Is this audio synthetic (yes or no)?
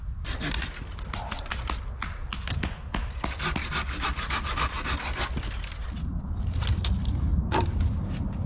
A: no